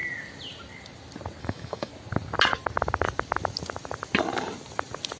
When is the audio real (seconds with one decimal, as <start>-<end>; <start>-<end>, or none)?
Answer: 0.0-1.4; 1.9-5.2